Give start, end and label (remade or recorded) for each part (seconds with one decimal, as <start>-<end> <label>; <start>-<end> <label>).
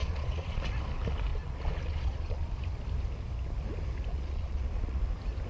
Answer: 0.0-0.7 remade; 0.7-1.3 recorded; 1.3-2.5 remade; 2.5-4.1 recorded; 4.1-5.0 remade; 5.0-5.5 recorded